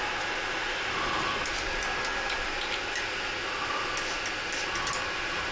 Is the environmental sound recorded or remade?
recorded